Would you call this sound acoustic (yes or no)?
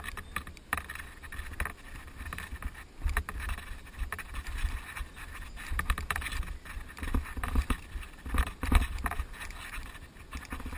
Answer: yes